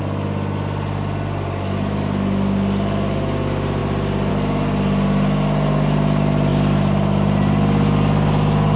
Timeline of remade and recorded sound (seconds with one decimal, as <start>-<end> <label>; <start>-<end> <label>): 0.0-8.8 recorded